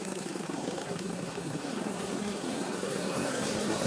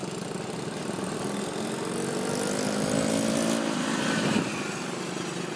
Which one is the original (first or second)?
second